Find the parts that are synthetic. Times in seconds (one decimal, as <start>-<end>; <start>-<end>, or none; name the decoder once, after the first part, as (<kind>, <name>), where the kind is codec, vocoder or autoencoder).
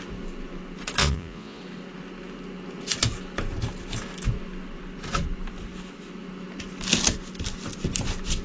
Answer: 1.0-1.6 (vocoder, Vocos)